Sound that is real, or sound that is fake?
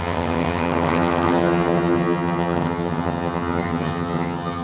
fake